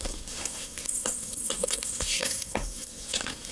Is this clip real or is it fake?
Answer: fake